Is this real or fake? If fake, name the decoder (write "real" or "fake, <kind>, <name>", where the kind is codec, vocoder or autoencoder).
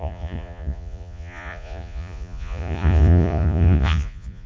fake, vocoder, Vocos